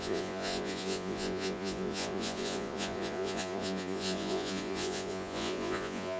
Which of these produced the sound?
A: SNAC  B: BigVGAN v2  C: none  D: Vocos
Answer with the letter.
D